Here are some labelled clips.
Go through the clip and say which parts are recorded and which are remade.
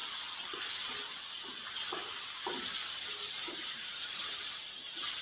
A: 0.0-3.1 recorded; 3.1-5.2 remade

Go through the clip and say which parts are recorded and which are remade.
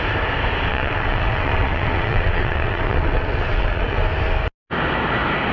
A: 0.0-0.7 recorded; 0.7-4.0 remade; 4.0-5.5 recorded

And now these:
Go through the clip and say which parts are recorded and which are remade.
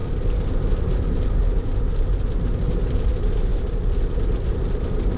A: 0.0-5.2 recorded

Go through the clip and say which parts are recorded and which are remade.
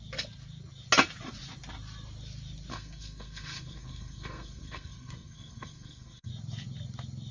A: 0.0-2.7 recorded; 2.7-6.3 remade; 6.3-7.3 recorded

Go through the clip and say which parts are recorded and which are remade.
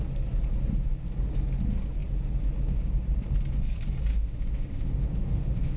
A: 0.0-4.1 recorded; 4.1-5.8 remade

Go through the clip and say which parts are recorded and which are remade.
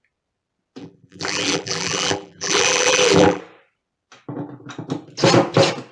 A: 0.0-0.8 recorded; 0.8-3.4 remade; 3.4-5.9 recorded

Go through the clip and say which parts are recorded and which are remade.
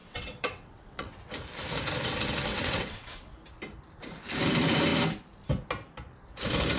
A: 0.0-1.2 remade; 1.2-2.5 recorded; 2.5-3.3 remade; 3.3-6.8 recorded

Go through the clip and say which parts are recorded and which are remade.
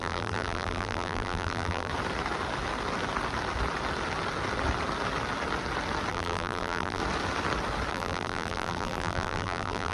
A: 0.0-1.9 remade; 1.9-6.1 recorded; 6.1-7.0 remade; 7.0-7.9 recorded; 7.9-9.9 remade